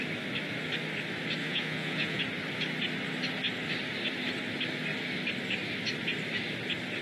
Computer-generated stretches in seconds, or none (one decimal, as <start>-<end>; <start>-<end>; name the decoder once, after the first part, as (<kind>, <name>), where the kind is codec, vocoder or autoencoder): 1.4-2.2 (vocoder, Vocos)